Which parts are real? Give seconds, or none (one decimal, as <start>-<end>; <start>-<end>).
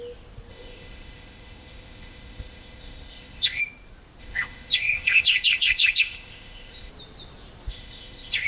0.0-0.5; 3.6-4.2; 6.9-7.7